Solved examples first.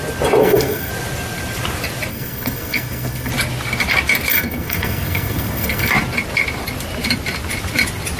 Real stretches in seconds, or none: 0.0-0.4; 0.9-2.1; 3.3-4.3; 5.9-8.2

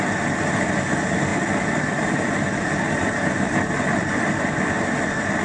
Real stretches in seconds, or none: 0.0-5.4

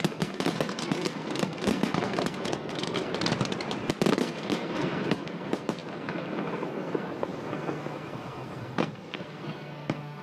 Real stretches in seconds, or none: 3.1-4.1